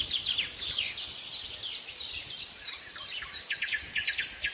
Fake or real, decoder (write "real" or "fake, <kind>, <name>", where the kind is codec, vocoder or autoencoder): real